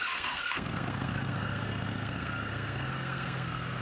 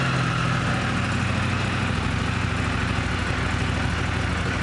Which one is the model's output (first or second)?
first